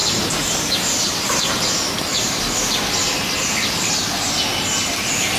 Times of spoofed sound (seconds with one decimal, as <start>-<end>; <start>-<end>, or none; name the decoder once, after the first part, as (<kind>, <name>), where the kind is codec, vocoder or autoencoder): 0.0-1.5 (vocoder, BigVGAN v2)